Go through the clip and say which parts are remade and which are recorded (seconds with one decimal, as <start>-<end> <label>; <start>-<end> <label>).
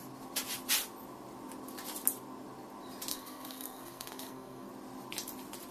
0.0-3.1 recorded; 3.1-4.7 remade; 4.7-5.7 recorded